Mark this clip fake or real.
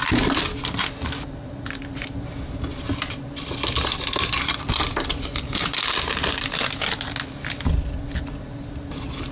real